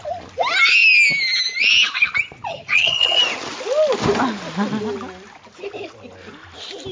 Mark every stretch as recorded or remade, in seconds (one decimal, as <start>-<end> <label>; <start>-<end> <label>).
0.0-2.5 recorded; 2.5-3.2 remade; 3.2-6.9 recorded